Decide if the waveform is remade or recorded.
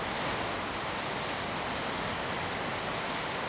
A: recorded